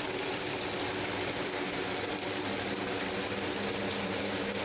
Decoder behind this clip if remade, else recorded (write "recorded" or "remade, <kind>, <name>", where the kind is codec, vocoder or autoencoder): recorded